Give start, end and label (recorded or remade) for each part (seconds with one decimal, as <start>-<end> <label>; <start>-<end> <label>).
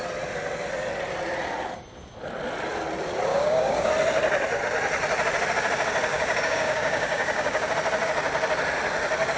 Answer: 0.0-3.3 recorded; 3.3-3.9 remade; 3.9-6.1 recorded; 6.1-7.7 remade; 7.7-9.4 recorded